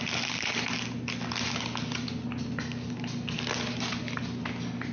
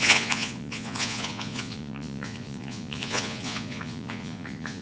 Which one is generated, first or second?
second